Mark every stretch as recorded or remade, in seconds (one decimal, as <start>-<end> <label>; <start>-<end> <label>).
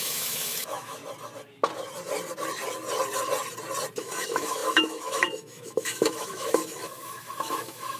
0.0-1.0 remade; 1.0-4.0 recorded; 4.0-8.0 remade